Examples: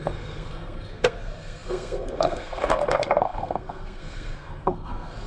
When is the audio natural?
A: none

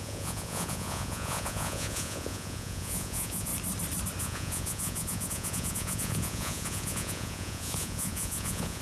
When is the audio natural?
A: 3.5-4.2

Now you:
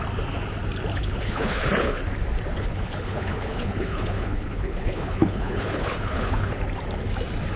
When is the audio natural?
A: 0.0-0.9; 2.0-2.5; 6.6-7.6

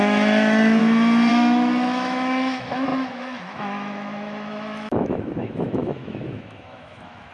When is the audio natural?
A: 0.8-1.3